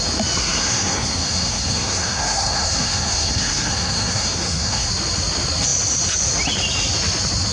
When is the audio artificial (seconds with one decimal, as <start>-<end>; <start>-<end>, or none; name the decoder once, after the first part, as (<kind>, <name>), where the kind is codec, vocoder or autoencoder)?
0.4-4.9 (codec, SNAC)